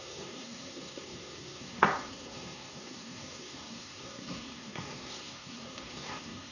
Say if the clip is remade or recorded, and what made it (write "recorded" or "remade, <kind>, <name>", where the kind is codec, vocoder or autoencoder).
remade, codec, SNAC